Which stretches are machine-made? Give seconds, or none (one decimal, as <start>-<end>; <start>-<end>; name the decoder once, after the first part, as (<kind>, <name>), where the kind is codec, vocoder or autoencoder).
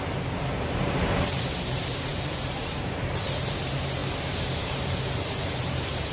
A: 0.0-4.0 (vocoder, BigVGAN v2); 4.6-6.1